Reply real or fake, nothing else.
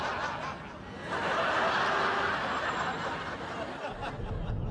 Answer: real